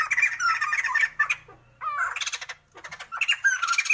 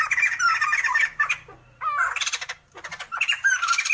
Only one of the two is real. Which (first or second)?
first